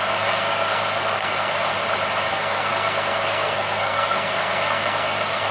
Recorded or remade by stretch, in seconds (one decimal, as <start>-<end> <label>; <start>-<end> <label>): 0.0-1.7 remade; 1.7-2.3 recorded; 2.3-5.5 remade